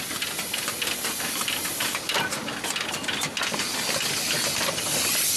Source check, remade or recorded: recorded